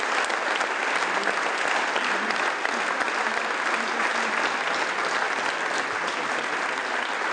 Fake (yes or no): no